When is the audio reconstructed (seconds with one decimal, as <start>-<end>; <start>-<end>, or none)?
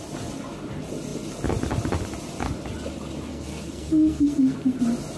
3.3-4.8